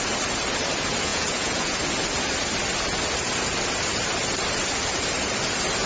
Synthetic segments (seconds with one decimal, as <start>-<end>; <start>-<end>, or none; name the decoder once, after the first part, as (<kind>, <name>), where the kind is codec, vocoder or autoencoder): 1.1-1.8 (vocoder, Vocos)

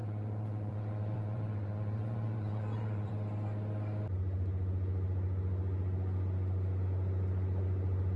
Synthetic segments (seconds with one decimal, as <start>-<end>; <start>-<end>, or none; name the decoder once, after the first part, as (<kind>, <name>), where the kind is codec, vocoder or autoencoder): 0.0-3.1 (vocoder, Vocos)

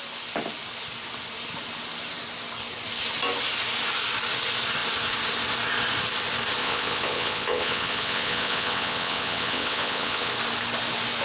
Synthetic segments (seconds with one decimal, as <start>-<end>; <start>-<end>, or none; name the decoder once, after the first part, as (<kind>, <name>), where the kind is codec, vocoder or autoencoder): 6.6-10.3 (vocoder, WaveNeXt)

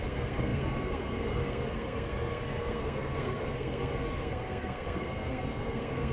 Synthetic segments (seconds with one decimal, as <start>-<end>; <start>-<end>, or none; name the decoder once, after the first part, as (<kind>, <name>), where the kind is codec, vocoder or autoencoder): 0.0-6.1 (codec, SNAC)

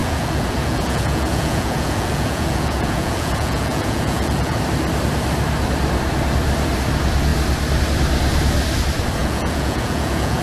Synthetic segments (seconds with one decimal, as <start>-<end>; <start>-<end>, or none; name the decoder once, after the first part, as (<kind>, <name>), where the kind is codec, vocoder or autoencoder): 0.0-4.6 (vocoder, Vocos); 9.2-10.4

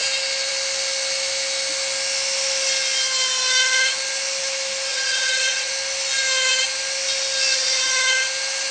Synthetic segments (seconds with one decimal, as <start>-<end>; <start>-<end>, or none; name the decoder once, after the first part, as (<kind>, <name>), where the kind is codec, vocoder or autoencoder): 4.9-5.7 (vocoder, WaveNeXt)

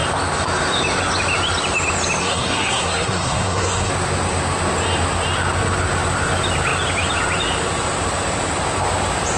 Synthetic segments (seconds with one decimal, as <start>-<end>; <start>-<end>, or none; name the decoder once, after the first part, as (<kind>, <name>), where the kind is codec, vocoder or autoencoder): 2.2-3.9 (codec, SNAC)

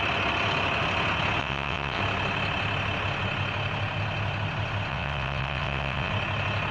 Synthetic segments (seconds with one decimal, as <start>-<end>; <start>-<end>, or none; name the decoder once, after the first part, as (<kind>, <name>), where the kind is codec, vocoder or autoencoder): 1.4-2.0 (vocoder, WaveNeXt); 4.9-6.1